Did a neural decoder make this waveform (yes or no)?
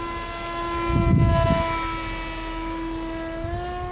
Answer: no